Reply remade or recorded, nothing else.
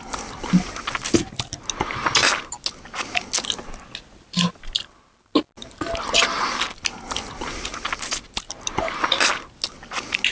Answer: recorded